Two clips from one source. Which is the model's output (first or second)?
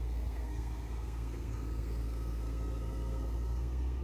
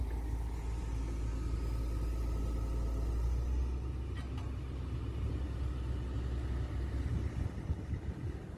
first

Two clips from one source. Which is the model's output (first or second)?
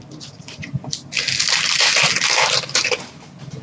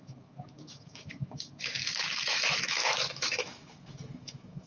second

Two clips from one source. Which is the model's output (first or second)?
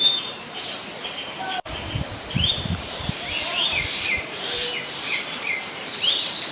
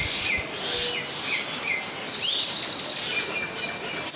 first